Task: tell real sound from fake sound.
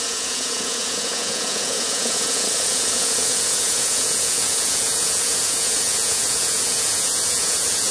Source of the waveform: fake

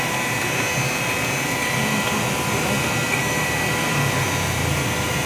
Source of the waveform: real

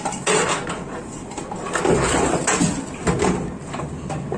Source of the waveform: real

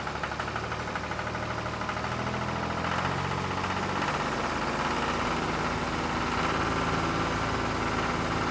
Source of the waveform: real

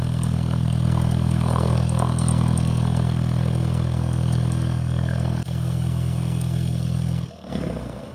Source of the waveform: fake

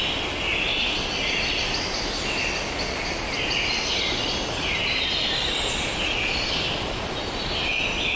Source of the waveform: real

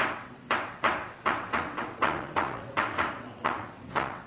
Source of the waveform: fake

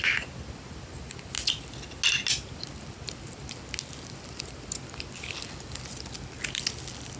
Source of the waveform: real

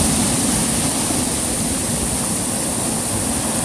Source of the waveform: real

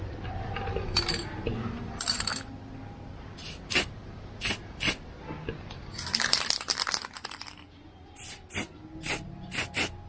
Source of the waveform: real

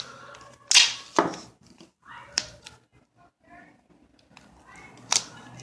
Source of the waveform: real